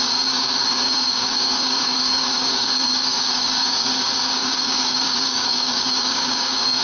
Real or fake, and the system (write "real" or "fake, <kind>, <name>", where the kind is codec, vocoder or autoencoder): fake, codec, DAC